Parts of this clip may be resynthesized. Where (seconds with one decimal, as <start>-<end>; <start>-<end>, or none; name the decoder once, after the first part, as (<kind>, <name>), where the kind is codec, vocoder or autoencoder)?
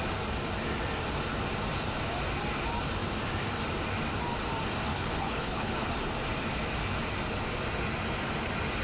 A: 4.9-5.9 (codec, HILCodec)